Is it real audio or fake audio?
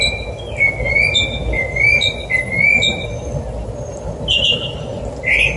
real